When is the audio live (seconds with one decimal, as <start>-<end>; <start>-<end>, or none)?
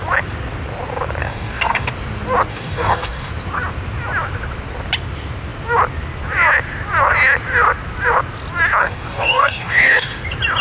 0.0-1.2; 1.9-2.5; 3.3-8.8; 10.2-10.6